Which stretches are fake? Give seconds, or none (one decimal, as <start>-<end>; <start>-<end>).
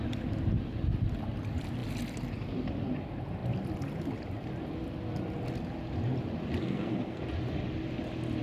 6.6-7.2